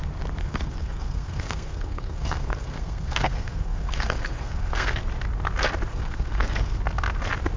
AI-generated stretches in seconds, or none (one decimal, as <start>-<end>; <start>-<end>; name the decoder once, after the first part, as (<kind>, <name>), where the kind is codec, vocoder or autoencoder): 0.4-5.0 (codec, SNAC); 5.9-6.8